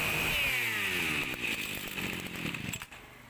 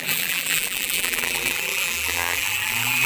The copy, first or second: second